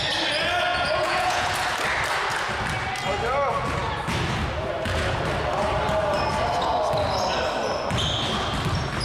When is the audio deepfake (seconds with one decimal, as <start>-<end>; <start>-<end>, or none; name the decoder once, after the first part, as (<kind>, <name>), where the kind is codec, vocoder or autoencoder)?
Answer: 0.7-1.5 (vocoder, Vocos)